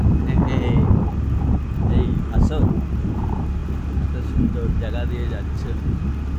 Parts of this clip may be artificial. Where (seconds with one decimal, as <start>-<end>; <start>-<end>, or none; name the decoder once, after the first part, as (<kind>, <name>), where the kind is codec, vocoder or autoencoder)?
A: none

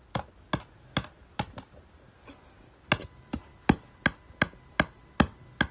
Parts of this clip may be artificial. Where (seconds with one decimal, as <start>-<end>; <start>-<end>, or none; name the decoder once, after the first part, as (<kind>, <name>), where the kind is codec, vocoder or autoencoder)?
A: none

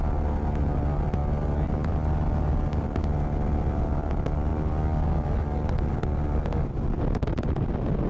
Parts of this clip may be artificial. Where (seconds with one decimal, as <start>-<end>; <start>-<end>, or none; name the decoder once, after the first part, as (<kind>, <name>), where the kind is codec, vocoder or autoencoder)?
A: none

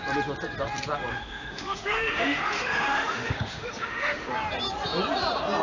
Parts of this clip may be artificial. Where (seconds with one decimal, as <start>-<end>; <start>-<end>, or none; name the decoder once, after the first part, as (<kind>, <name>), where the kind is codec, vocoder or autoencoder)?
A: 1.1-4.3 (autoencoder, DAC-VAE)